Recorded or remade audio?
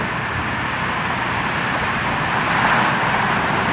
remade